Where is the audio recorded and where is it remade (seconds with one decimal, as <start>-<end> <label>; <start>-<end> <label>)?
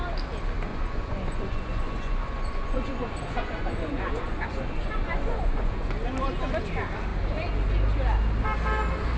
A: 0.0-0.7 recorded; 0.7-5.9 remade; 5.9-9.2 recorded